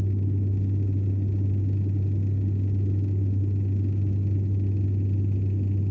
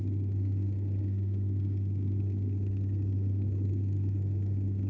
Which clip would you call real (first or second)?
first